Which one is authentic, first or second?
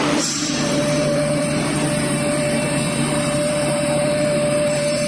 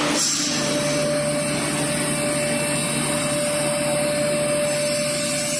second